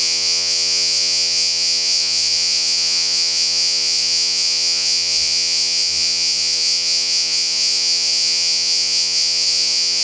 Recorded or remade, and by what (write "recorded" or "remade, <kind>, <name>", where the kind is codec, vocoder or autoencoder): remade, vocoder, Vocos